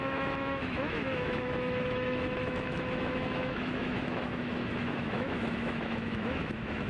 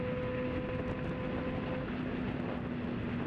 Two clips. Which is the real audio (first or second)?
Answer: second